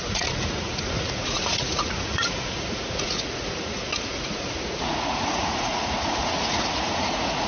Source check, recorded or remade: remade